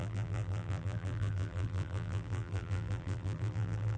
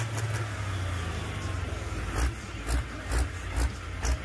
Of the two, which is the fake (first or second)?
first